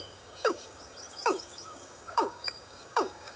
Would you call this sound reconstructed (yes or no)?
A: yes